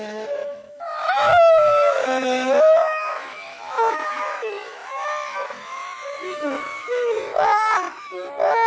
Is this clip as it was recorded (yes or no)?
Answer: no